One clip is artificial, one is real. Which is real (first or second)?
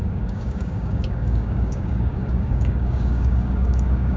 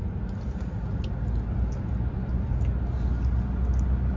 second